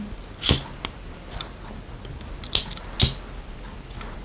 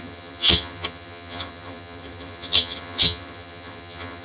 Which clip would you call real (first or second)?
first